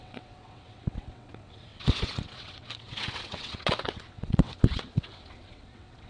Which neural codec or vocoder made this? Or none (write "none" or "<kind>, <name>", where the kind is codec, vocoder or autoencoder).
vocoder, WaveNeXt